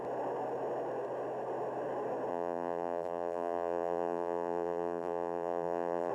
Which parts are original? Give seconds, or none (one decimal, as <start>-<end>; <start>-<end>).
0.0-2.3